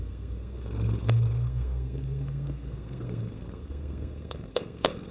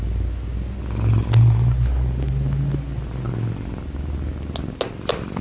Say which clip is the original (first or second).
second